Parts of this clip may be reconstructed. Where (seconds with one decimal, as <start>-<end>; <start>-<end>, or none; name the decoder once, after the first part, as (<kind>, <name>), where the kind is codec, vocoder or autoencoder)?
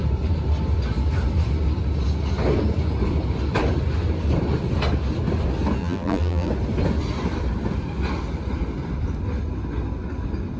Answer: 5.8-6.5 (vocoder, BigVGAN v2)